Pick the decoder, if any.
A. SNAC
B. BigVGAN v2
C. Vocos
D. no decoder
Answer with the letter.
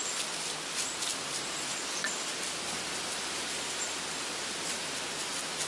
B